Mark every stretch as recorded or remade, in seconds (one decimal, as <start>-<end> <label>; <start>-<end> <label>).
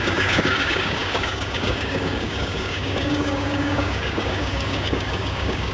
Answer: 0.0-5.7 remade